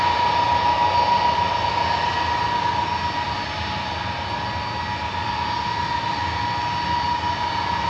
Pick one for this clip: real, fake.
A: real